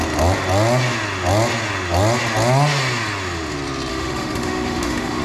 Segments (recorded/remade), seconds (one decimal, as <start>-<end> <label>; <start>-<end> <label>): 0.0-3.9 recorded; 3.9-5.2 remade